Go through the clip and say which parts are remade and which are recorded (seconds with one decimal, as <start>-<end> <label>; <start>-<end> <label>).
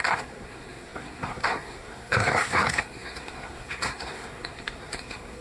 0.0-5.4 remade